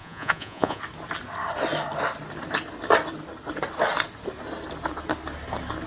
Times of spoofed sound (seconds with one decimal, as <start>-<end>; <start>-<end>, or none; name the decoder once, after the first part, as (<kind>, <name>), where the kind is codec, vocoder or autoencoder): 0.0-0.8 (vocoder, Vocos)